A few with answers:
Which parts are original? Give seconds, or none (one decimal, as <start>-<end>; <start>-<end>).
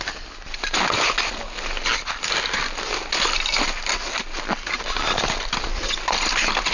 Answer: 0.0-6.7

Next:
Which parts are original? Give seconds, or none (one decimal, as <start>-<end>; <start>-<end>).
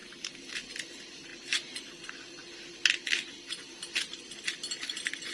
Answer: 0.0-5.3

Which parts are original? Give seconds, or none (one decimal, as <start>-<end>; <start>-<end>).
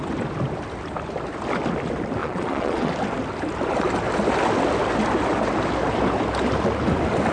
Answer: 0.0-2.2; 2.9-7.3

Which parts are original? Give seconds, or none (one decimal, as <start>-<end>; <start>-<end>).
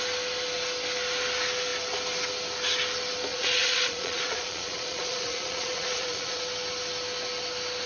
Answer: 0.0-3.3; 6.4-7.9